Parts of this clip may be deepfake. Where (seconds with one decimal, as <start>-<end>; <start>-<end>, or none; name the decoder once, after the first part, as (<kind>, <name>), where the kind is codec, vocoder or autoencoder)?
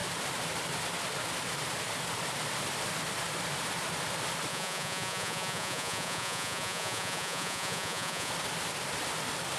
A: 4.5-8.3 (vocoder, Vocos)